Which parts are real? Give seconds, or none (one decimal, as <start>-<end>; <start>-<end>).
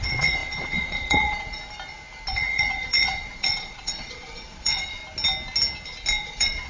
1.6-2.3; 5.0-6.2